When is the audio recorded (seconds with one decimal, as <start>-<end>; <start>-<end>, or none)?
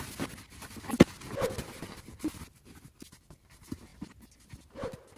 0.0-5.2